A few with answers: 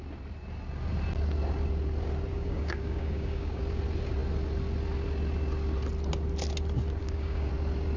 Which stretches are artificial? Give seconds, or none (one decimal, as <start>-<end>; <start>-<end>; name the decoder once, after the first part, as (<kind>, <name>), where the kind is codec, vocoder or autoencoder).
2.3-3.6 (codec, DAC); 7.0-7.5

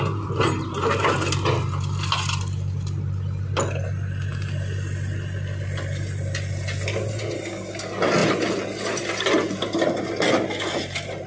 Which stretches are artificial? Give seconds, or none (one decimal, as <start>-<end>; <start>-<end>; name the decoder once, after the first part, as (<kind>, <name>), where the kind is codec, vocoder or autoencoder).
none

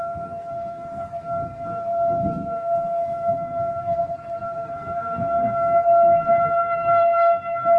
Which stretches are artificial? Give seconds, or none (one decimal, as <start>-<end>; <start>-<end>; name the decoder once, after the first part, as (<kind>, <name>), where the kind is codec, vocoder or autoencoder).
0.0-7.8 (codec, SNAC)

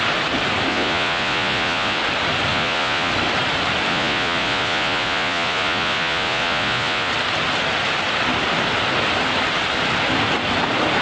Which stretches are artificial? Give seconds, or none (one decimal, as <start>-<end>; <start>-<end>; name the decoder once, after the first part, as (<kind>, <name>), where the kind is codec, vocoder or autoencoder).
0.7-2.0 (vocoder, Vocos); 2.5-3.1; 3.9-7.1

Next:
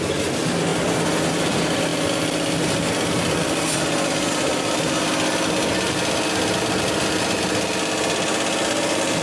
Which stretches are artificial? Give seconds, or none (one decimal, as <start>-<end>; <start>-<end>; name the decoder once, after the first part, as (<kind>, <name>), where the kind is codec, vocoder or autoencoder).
none

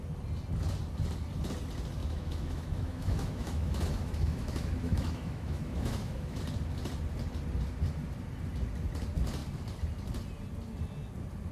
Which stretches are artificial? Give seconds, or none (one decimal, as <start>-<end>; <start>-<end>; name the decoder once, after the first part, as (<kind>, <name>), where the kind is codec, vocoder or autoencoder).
2.0-6.4 (autoencoder, DAC-VAE)